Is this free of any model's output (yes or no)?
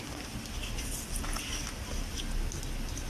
yes